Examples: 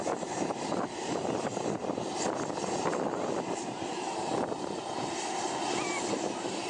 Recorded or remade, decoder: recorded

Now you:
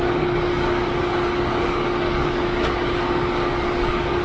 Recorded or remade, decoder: remade, codec, DAC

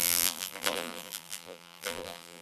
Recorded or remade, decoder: remade, vocoder, BigVGAN v2